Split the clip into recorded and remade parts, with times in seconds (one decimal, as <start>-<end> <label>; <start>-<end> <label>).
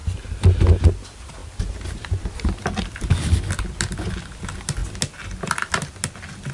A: 0.0-6.5 recorded